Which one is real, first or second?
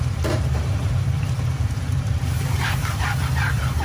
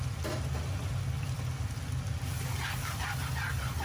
second